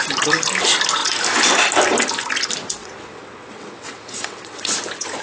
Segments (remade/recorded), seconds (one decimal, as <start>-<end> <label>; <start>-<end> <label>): 0.0-2.8 recorded; 2.8-4.7 remade; 4.7-5.2 recorded